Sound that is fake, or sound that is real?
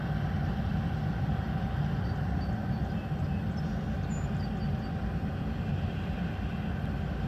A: real